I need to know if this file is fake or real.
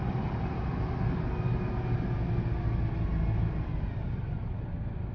real